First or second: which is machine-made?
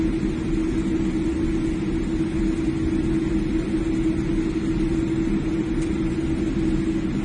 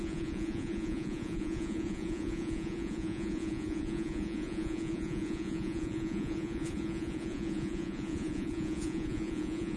second